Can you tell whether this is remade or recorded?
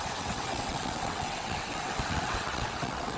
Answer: remade